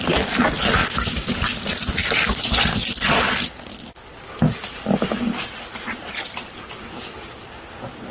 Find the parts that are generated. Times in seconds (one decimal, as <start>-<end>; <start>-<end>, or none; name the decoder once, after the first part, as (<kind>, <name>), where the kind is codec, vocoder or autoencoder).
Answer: none

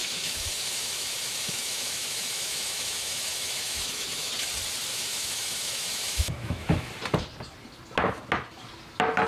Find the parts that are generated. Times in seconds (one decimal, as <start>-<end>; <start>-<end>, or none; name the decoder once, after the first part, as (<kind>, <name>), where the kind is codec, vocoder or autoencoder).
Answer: 0.0-4.3 (autoencoder, DAC-VAE); 4.9-6.9

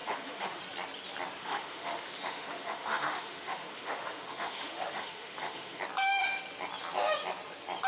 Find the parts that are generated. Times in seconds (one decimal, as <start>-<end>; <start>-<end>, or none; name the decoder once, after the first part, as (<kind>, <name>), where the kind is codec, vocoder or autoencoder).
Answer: 0.0-0.6 (autoencoder, DAC-VAE); 1.4-5.8